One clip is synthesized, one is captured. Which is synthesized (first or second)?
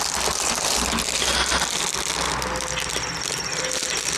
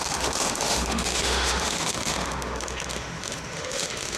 second